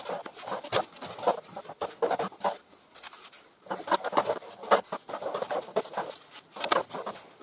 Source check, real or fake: real